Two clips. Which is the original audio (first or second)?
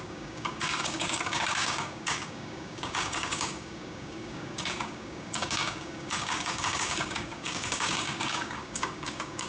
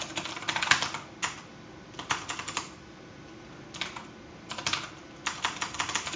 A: second